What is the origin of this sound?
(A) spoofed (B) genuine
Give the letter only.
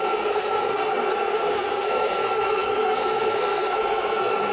A